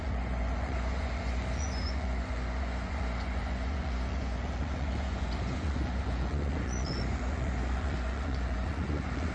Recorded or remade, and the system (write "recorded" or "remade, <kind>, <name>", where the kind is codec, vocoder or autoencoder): remade, vocoder, Vocos